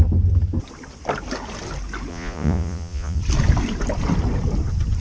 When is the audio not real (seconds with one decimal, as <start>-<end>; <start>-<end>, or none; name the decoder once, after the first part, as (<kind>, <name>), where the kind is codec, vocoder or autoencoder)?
2.1-3.2 (vocoder, Vocos)